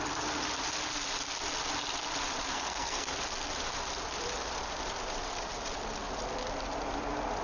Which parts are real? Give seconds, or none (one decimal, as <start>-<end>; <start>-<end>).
0.0-2.5; 3.1-7.4